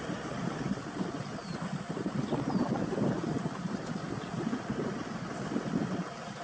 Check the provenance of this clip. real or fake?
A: real